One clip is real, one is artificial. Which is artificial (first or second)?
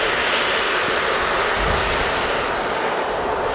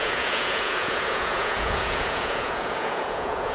second